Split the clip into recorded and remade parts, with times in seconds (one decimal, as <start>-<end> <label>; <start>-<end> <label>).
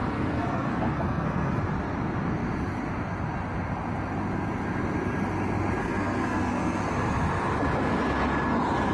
0.0-1.6 remade; 1.6-5.8 recorded; 5.8-6.9 remade; 6.9-8.9 recorded